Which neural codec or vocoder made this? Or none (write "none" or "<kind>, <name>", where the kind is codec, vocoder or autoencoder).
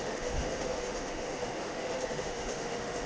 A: autoencoder, DAC-VAE